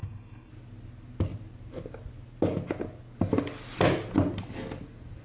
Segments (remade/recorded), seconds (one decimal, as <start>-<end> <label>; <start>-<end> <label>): 0.0-0.5 remade; 0.5-5.2 recorded